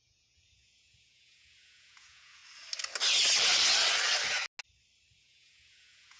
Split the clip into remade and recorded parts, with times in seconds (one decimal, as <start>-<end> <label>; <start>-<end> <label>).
0.0-2.4 remade; 2.4-5.2 recorded; 5.2-6.2 remade